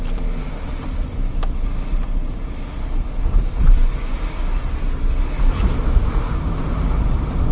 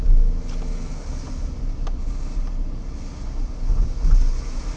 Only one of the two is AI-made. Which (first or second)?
first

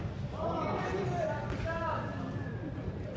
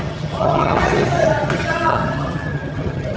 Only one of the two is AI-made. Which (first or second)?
second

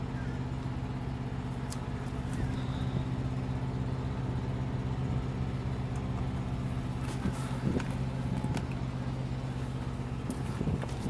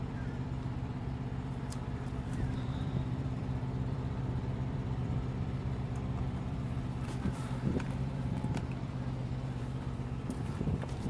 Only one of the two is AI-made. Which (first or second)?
second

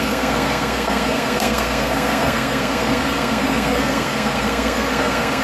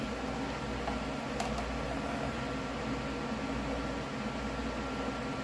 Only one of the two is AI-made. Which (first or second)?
first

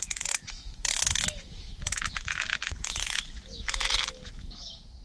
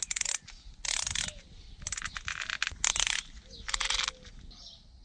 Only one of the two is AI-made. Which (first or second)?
first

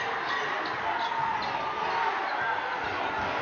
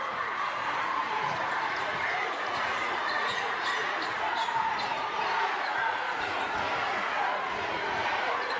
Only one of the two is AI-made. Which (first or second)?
second